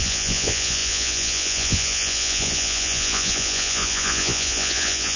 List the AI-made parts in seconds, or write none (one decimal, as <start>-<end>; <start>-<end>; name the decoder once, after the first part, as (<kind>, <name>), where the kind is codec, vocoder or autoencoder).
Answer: 0.0-5.2 (vocoder, Vocos)